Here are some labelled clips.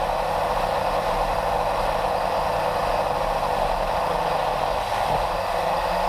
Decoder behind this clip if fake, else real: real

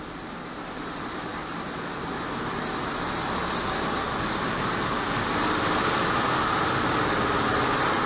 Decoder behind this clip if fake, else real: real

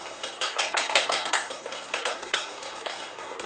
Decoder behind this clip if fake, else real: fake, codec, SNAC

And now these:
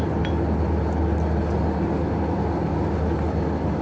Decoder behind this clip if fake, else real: real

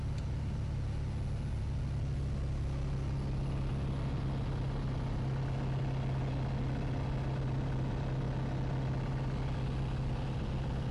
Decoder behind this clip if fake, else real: real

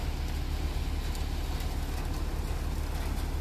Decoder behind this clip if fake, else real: real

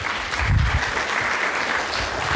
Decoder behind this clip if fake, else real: real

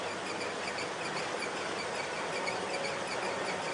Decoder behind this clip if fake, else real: real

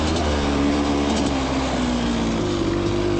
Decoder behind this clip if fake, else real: real